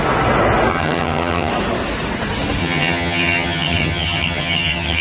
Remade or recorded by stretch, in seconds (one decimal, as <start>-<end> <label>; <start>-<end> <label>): 0.0-0.7 recorded; 0.7-1.5 remade; 1.5-2.6 recorded; 2.6-5.0 remade

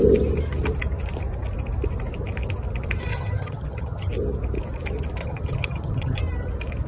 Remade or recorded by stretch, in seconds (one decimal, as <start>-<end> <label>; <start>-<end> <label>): 0.0-3.1 recorded; 3.1-4.1 remade; 4.1-5.2 recorded; 5.2-6.2 remade; 6.2-6.9 recorded

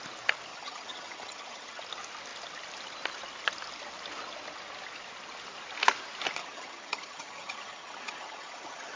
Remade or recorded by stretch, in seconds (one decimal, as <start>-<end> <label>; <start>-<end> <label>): 0.0-0.5 recorded; 0.5-1.8 remade; 1.8-6.4 recorded; 6.4-9.0 remade

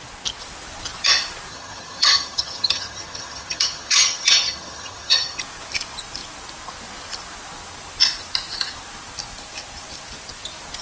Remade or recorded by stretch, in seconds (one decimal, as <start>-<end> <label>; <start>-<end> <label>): 0.0-1.5 recorded; 1.5-5.4 remade; 5.4-10.8 recorded

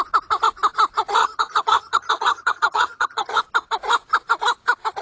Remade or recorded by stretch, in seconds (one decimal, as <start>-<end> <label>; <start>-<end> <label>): 0.0-1.2 recorded; 1.2-3.4 remade; 3.4-5.0 recorded

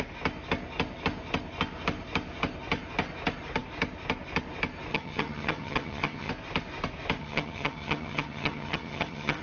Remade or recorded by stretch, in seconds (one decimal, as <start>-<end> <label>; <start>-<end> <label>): 0.0-4.9 recorded; 4.9-6.3 remade; 6.3-7.2 recorded; 7.2-9.4 remade